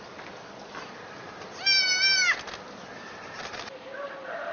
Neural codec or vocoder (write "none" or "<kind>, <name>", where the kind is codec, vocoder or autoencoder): none